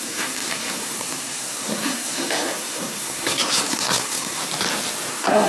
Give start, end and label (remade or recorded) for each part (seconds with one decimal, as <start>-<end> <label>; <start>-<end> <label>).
0.0-4.4 remade; 4.4-5.1 recorded; 5.1-5.5 remade